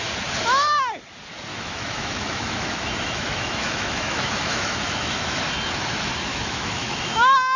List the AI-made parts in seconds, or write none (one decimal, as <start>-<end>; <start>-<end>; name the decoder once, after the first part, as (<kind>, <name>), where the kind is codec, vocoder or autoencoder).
1.5-5.4 (autoencoder, DAC-VAE); 6.3-7.6